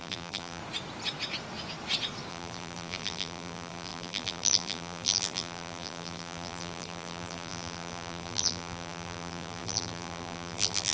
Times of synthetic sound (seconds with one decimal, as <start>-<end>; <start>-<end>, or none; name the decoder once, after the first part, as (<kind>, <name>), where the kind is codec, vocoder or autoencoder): 0.0-0.6 (vocoder, BigVGAN v2); 2.3-10.9